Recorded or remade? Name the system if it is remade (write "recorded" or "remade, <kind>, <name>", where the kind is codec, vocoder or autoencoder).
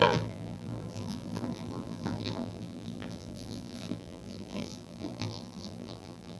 remade, vocoder, BigVGAN v2